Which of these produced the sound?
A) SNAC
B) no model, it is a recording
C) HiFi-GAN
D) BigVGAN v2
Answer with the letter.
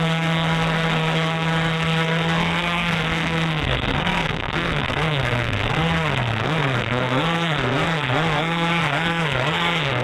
A